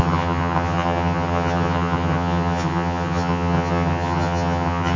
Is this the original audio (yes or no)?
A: no